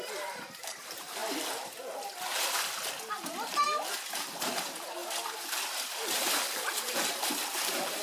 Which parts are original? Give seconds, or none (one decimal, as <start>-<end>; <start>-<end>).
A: 1.2-3.1